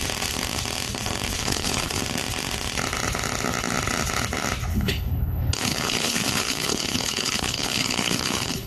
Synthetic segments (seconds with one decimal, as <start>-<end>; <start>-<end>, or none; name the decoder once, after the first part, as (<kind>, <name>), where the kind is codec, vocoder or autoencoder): 1.4-2.0 (codec, HILCodec); 4.7-8.7